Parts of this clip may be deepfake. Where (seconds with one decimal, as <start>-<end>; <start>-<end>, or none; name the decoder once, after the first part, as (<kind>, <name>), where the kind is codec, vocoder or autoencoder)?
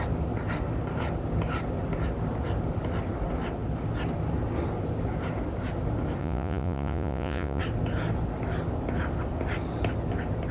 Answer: 6.2-7.6 (vocoder, Vocos)